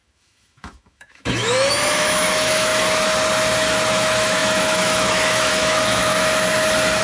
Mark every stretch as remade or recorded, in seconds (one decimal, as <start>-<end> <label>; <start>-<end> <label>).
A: 0.0-2.7 remade; 2.7-3.9 recorded; 3.9-6.1 remade; 6.1-7.0 recorded